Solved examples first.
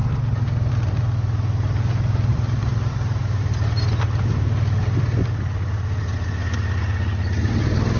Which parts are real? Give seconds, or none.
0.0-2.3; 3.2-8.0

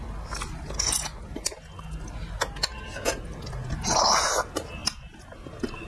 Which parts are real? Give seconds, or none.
0.0-5.9

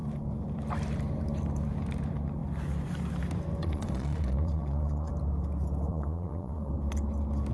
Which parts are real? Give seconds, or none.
0.0-3.6; 5.1-5.9; 6.7-7.5